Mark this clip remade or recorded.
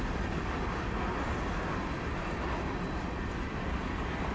recorded